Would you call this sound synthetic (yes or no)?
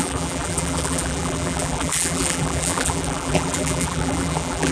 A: yes